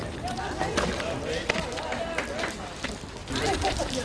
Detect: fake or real real